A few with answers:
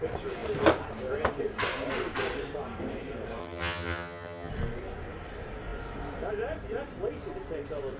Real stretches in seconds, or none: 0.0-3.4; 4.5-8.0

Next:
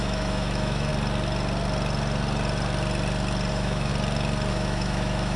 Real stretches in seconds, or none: 0.9-3.5; 3.9-4.5

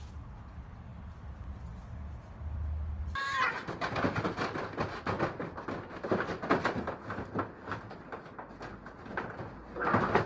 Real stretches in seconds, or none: 0.0-10.3

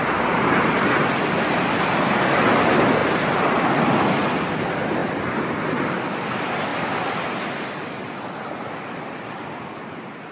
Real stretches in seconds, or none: 0.0-10.3

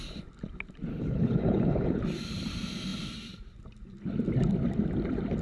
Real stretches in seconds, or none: 0.0-0.9; 2.0-5.4

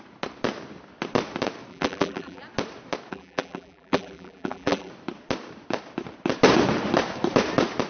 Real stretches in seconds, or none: 0.0-1.7; 2.4-3.1; 4.9-7.9

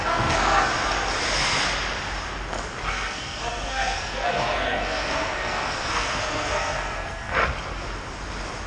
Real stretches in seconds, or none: 0.7-2.9; 7.4-8.7

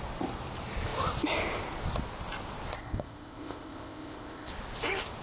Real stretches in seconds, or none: 0.0-2.8; 4.5-5.2